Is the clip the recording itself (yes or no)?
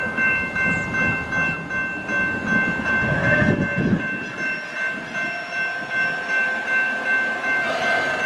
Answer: yes